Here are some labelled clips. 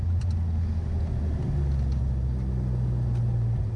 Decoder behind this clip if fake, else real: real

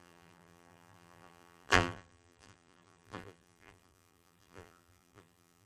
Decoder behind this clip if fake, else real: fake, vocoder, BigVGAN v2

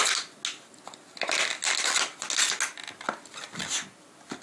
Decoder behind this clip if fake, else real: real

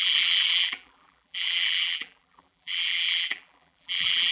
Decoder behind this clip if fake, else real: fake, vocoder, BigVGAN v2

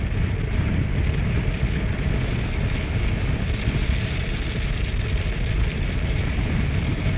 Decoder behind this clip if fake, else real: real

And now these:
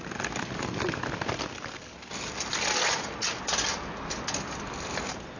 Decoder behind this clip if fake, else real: real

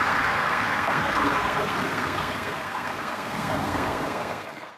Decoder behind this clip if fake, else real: fake, codec, SNAC